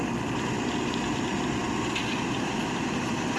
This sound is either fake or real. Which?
fake